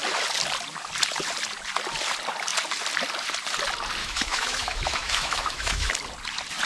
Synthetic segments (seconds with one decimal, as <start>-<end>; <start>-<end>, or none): 4.0-5.9